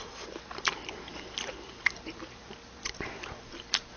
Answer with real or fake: fake